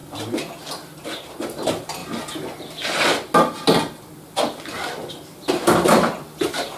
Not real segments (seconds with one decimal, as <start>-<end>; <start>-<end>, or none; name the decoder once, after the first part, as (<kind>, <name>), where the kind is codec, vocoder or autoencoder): none